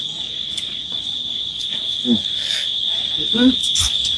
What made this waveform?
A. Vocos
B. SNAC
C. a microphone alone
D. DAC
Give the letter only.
D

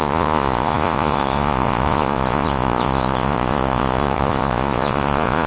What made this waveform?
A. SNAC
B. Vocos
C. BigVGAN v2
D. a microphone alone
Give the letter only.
B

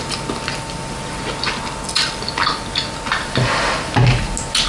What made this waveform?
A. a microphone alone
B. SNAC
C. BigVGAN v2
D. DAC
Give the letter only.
A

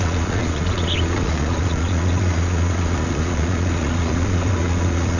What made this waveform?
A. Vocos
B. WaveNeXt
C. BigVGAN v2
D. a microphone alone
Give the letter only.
A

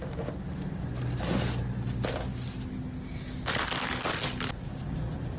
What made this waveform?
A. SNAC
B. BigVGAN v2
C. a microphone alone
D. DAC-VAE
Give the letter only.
C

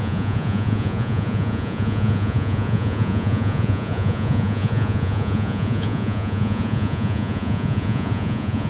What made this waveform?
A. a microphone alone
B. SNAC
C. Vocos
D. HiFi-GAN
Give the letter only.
C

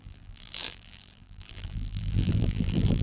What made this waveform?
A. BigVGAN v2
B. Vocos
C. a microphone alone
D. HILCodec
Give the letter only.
A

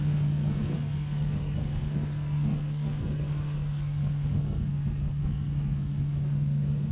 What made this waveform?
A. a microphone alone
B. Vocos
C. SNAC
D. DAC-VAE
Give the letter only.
C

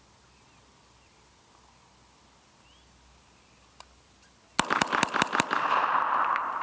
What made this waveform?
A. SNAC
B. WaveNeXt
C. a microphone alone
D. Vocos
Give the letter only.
C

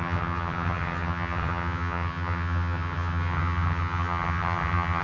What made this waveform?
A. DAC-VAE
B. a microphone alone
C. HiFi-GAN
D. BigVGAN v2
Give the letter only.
C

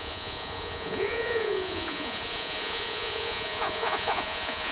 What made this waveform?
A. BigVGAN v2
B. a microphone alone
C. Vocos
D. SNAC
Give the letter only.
C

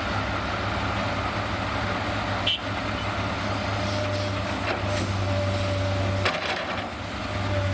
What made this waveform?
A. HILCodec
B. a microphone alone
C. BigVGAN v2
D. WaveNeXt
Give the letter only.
B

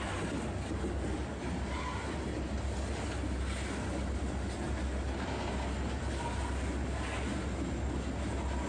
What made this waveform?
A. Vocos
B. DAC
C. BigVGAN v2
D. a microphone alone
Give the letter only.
D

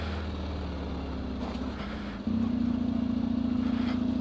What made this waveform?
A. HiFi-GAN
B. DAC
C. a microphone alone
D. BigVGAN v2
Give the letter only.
C